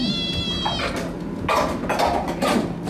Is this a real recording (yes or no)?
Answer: yes